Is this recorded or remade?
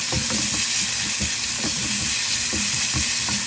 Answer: recorded